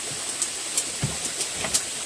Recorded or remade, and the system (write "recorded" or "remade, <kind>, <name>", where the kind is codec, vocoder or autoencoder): recorded